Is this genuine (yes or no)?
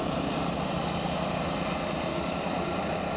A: no